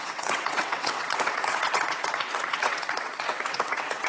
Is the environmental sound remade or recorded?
remade